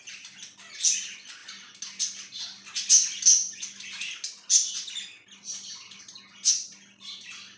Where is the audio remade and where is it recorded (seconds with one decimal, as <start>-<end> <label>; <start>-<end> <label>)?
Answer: 0.0-7.6 recorded